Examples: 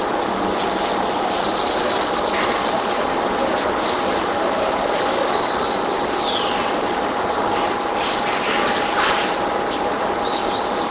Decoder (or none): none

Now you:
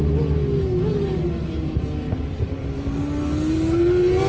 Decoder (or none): none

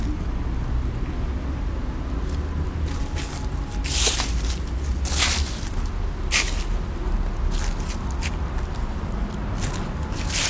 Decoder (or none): none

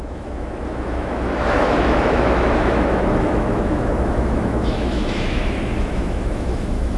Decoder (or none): autoencoder, DAC-VAE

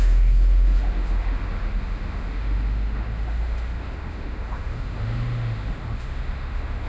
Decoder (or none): autoencoder, DAC-VAE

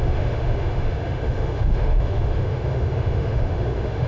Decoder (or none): autoencoder, DAC-VAE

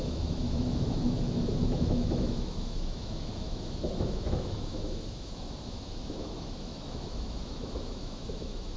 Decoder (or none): autoencoder, DAC-VAE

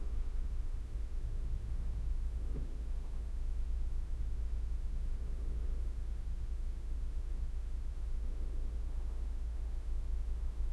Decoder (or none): autoencoder, DAC-VAE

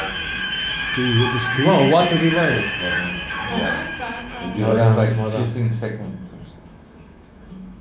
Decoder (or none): autoencoder, DAC-VAE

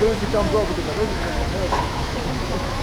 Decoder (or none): autoencoder, DAC-VAE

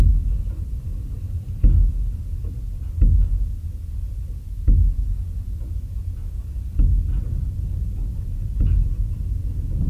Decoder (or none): none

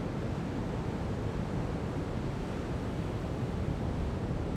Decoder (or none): none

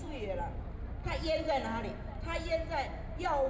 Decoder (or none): none